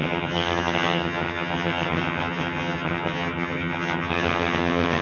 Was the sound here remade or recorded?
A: remade